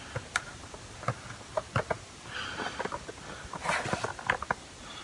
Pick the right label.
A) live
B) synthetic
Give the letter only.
A